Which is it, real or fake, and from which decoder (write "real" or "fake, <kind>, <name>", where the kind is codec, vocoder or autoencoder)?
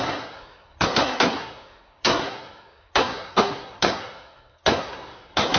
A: fake, codec, SNAC